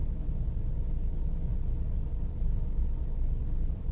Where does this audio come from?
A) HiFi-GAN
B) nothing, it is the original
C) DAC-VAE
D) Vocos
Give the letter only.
B